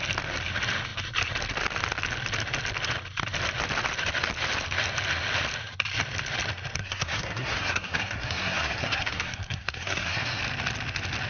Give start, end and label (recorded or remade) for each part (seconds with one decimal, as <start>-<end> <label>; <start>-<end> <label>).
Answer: 0.0-6.8 recorded; 6.8-10.4 remade; 10.4-11.3 recorded